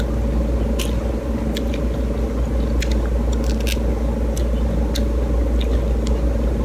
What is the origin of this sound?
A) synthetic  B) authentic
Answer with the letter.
B